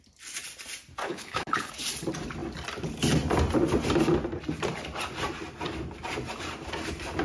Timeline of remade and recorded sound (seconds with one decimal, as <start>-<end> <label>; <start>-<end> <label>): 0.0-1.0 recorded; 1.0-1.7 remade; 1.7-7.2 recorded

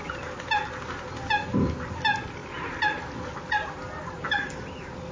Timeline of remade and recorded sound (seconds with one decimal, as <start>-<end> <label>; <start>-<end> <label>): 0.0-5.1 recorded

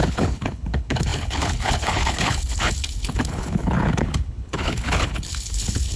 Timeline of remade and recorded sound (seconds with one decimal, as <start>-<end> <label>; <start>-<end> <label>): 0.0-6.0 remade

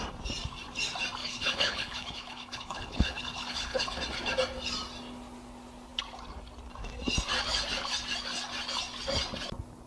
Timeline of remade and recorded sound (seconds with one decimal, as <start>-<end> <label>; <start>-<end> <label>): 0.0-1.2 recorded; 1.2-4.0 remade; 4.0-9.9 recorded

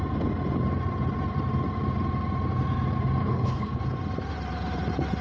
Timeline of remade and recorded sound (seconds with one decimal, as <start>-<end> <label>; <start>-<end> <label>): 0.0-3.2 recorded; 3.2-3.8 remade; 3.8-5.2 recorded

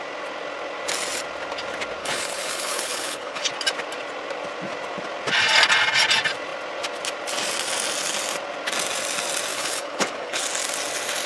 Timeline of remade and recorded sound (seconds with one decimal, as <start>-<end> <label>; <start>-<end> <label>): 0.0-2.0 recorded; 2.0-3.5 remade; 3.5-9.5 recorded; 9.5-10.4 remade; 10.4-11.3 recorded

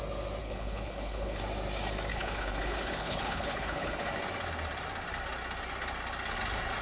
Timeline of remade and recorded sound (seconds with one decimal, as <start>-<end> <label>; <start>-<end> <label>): 0.0-0.4 recorded; 0.4-1.4 remade; 1.4-2.1 recorded; 2.1-4.1 remade; 4.1-6.8 recorded